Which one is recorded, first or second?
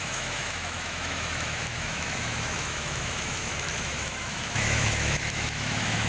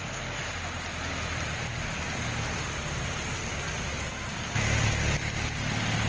second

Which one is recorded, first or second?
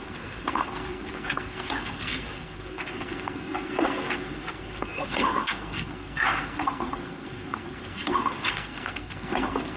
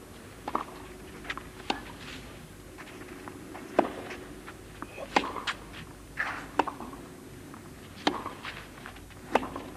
second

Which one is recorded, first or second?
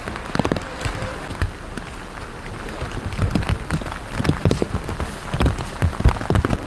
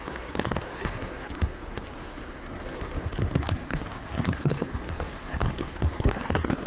first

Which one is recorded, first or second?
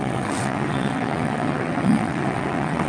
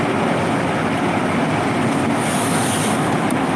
second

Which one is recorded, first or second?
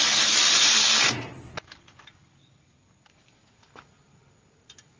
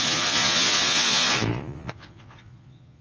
first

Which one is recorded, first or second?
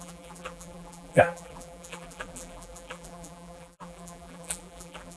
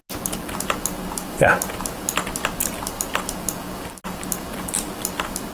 second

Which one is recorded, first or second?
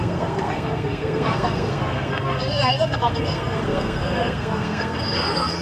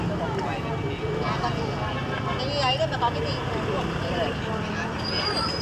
second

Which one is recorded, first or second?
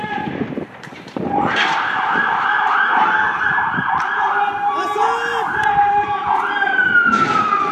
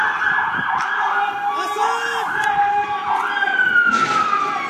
second